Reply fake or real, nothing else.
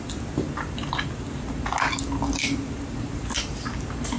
real